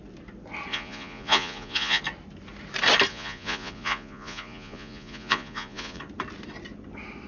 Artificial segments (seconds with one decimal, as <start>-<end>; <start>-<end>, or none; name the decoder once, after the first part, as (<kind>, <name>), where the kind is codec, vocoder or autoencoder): 0.7-2.0 (vocoder, Vocos); 3.1-6.0